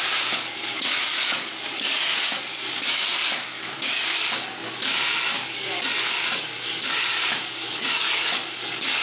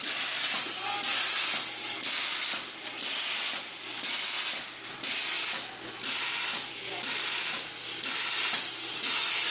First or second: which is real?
second